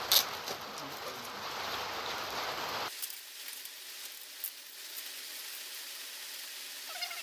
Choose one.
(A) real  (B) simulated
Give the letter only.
A